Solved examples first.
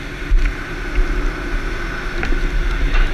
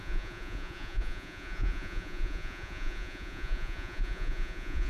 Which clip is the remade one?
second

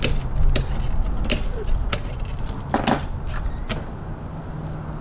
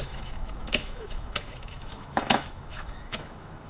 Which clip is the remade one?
second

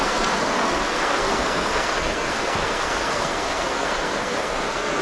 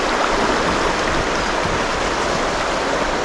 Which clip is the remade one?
first